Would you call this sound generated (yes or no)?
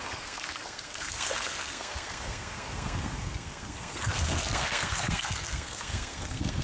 yes